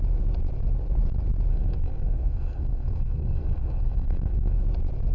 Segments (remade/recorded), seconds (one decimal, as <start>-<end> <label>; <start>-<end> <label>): 0.0-1.5 recorded; 1.5-4.6 remade; 4.6-5.1 recorded